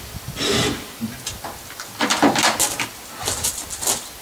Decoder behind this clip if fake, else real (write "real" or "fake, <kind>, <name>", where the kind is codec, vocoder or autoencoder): real